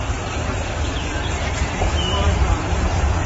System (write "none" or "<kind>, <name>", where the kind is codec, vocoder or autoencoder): vocoder, BigVGAN v2